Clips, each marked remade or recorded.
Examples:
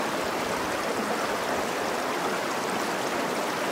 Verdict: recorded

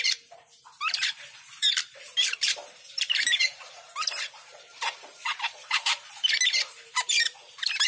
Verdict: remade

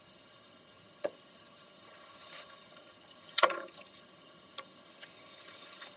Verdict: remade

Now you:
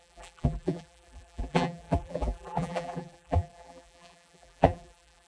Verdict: remade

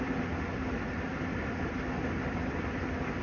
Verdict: recorded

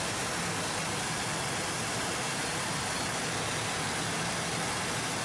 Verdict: recorded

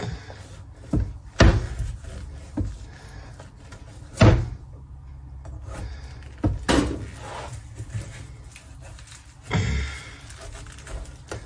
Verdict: recorded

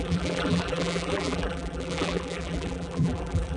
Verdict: remade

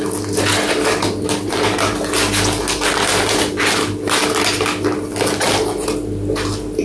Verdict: recorded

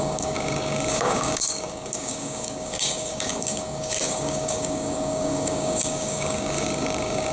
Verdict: remade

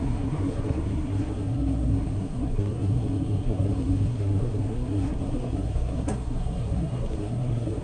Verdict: remade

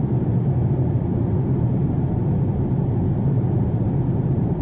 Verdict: recorded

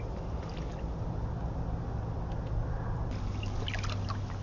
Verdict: recorded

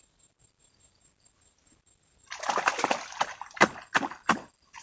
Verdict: recorded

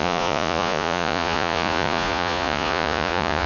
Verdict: remade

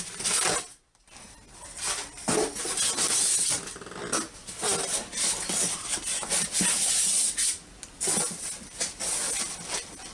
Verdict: recorded